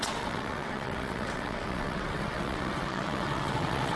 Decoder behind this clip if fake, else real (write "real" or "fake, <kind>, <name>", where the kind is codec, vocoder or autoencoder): fake, vocoder, WaveNeXt